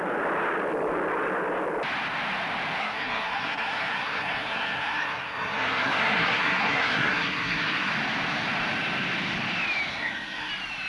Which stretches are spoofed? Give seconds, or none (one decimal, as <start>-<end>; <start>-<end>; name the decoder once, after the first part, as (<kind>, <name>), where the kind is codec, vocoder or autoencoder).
2.8-7.9 (codec, SNAC); 9.9-10.5